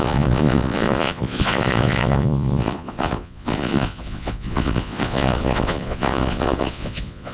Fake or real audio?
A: fake